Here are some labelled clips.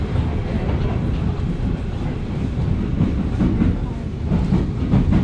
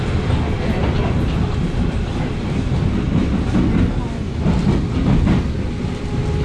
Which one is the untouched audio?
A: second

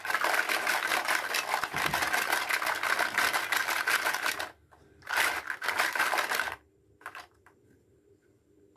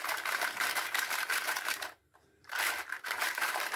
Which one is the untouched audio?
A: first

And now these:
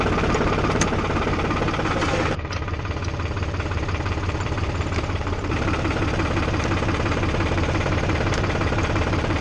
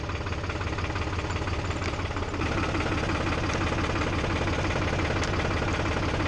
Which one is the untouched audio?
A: second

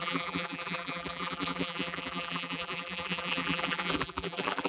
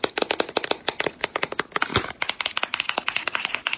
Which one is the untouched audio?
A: second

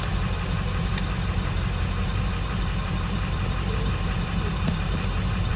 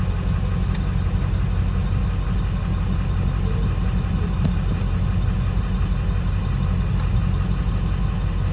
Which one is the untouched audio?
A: second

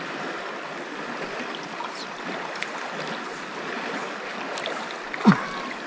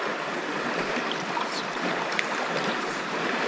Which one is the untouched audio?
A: first